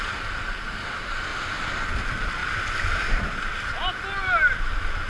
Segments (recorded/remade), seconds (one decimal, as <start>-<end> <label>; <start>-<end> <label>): 0.0-5.1 recorded